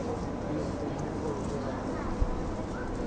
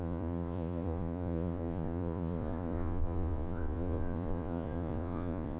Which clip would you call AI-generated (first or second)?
second